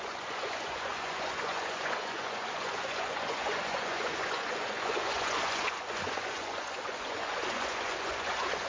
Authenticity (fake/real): fake